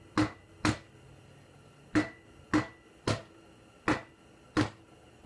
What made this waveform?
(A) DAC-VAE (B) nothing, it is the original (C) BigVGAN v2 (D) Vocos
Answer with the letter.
B